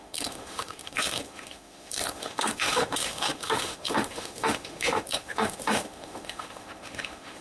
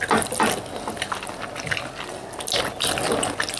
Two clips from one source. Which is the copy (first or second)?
first